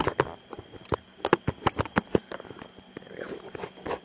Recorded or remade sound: recorded